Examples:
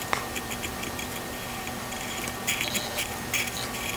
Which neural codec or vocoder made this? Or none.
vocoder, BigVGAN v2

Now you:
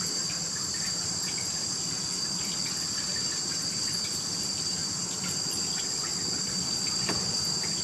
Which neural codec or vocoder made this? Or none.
vocoder, BigVGAN v2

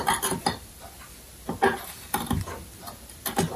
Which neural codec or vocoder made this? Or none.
vocoder, BigVGAN v2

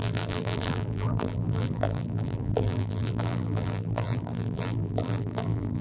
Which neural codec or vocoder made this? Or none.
vocoder, BigVGAN v2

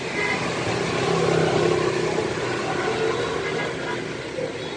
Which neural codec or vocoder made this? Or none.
none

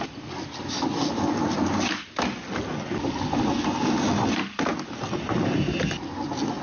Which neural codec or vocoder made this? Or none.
none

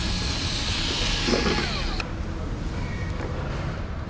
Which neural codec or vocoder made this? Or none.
none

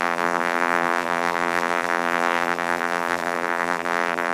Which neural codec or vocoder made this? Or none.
vocoder, BigVGAN v2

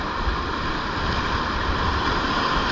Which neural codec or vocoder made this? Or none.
none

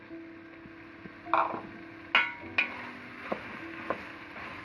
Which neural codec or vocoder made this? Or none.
none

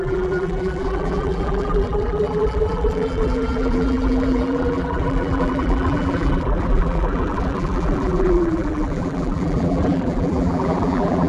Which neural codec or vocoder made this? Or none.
vocoder, BigVGAN v2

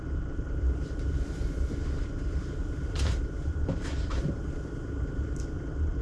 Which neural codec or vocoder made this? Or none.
vocoder, BigVGAN v2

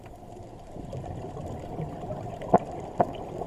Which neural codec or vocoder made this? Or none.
none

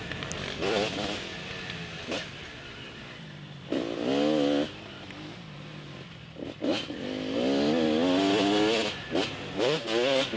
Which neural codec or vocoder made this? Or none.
none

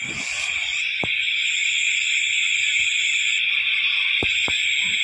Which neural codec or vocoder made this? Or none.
vocoder, BigVGAN v2